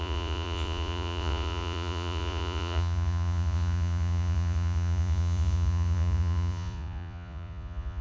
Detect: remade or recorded remade